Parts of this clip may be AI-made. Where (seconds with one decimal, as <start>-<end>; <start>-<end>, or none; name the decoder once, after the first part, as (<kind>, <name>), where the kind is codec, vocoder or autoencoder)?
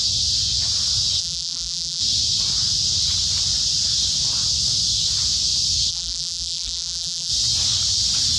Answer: 1.2-2.0 (vocoder, BigVGAN v2); 5.9-7.3